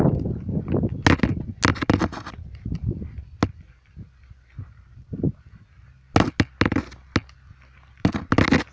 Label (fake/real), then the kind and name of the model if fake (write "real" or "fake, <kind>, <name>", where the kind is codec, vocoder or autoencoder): real